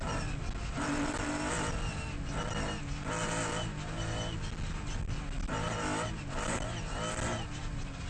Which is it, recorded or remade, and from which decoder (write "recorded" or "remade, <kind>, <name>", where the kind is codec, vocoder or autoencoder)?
recorded